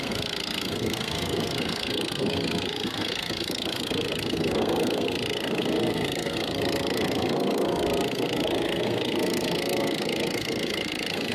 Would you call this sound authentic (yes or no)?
no